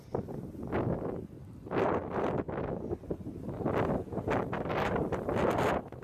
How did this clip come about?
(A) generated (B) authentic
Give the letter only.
B